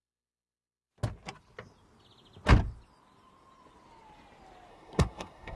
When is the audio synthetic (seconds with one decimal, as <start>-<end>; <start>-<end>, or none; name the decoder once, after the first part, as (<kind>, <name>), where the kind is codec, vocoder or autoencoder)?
4.7-5.6 (codec, SNAC)